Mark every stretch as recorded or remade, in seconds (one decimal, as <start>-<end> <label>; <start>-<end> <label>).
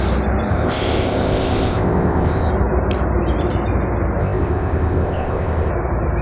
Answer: 0.0-0.5 recorded; 0.5-2.5 remade; 2.5-4.2 recorded; 4.2-5.7 remade; 5.7-6.2 recorded